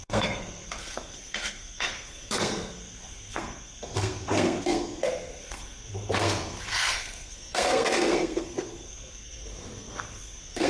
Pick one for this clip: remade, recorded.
remade